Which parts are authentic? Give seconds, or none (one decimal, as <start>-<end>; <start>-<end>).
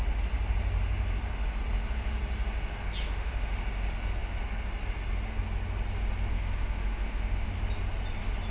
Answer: 0.0-3.0; 3.6-6.3; 7.6-8.5